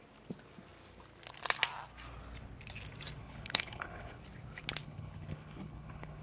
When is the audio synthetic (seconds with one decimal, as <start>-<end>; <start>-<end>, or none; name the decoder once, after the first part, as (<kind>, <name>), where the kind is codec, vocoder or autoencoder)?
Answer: 3.2-4.2 (codec, HILCodec); 4.8-6.2